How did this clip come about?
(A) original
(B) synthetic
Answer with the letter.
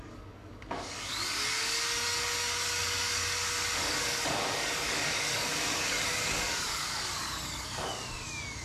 B